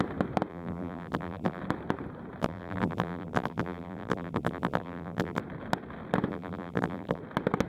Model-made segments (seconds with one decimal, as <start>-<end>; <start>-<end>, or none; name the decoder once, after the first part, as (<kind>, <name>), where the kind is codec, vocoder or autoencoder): 0.5-1.6 (vocoder, BigVGAN v2); 2.4-5.4; 6.3-7.2